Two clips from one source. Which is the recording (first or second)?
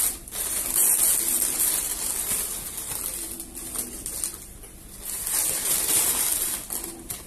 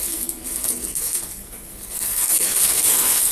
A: first